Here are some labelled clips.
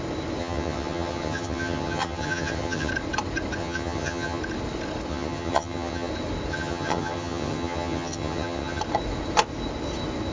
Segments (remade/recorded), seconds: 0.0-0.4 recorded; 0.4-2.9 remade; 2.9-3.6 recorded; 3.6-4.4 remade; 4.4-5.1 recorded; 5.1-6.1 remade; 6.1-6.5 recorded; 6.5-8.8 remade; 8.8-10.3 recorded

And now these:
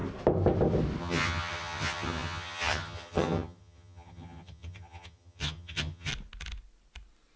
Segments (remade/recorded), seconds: 0.0-1.0 recorded; 1.0-6.1 remade; 6.1-7.4 recorded

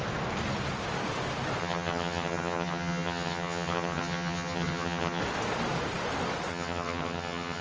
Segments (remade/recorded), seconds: 0.0-1.6 recorded; 1.6-5.2 remade; 5.2-6.5 recorded; 6.5-7.6 remade